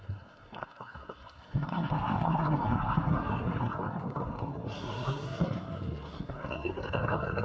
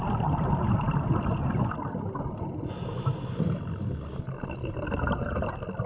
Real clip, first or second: second